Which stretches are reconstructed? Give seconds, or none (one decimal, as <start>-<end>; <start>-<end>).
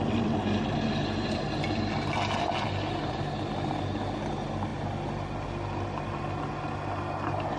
none